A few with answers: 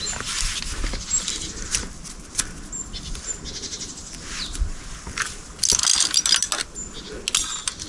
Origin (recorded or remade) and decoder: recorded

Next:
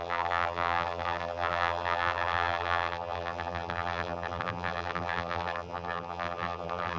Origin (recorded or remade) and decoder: remade, vocoder, BigVGAN v2